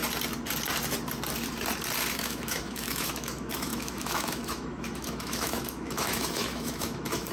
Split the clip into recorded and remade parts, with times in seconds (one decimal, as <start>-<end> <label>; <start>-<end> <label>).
0.0-2.1 recorded; 2.1-7.3 remade